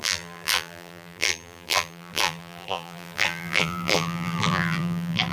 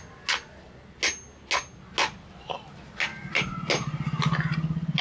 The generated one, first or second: first